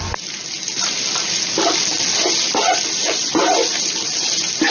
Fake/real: real